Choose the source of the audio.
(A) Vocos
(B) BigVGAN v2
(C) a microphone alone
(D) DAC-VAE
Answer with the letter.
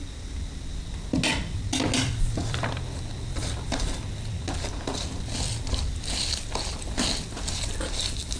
C